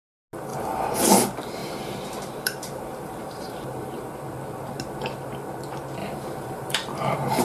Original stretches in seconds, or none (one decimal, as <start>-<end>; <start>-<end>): 0.0-0.5; 1.1-1.6; 4.1-6.0